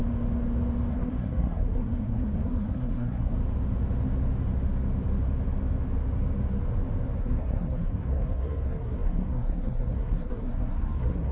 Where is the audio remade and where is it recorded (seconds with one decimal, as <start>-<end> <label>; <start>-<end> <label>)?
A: 0.0-0.9 recorded; 0.9-3.3 remade; 3.3-7.2 recorded; 7.2-11.3 remade